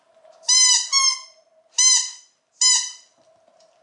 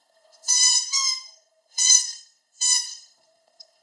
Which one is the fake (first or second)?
second